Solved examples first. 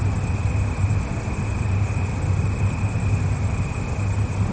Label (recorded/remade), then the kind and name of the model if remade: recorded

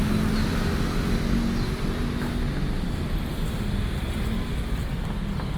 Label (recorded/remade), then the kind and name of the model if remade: recorded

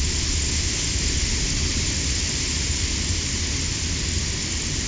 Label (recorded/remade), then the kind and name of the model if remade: recorded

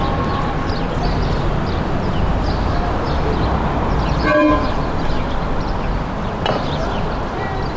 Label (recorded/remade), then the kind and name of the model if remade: recorded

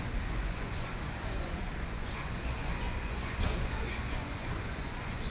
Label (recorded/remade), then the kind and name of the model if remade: remade, vocoder, Vocos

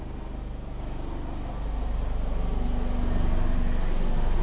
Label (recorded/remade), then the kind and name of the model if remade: recorded